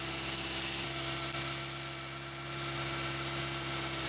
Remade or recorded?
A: recorded